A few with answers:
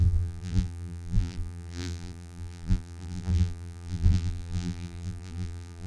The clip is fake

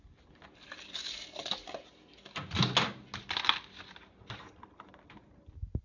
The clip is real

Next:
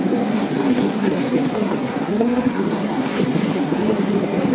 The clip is fake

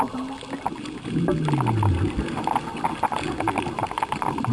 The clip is real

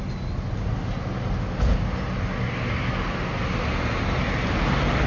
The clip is real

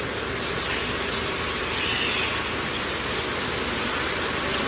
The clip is real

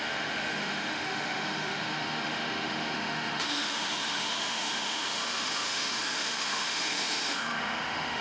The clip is fake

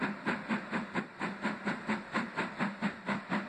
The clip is real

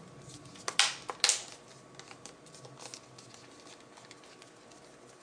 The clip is real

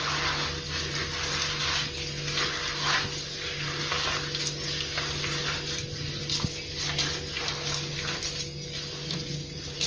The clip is real